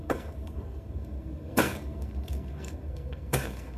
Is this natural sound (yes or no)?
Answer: no